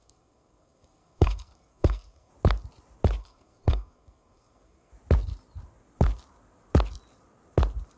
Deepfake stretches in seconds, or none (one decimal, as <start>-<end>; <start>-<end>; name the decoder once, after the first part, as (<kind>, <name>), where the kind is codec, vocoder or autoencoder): 0.0-2.3 (codec, SNAC); 3.2-4.9